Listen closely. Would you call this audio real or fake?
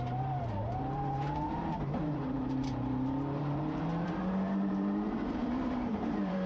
fake